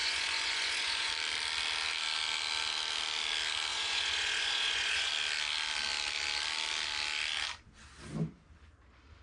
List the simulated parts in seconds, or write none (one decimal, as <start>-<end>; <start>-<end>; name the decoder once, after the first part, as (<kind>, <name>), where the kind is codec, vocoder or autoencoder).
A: 0.0-1.1 (vocoder, Vocos); 3.7-5.1